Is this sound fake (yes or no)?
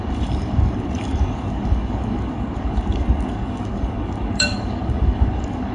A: yes